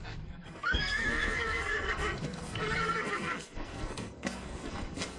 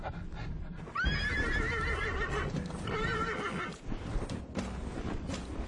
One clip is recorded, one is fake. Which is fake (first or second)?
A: first